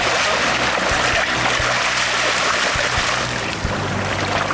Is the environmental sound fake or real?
real